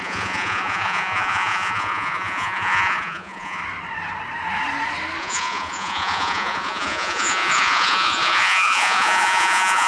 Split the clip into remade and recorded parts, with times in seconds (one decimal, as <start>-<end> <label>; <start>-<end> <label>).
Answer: 0.0-3.6 remade; 3.6-5.2 recorded; 5.2-9.9 remade